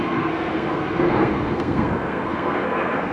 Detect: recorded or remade remade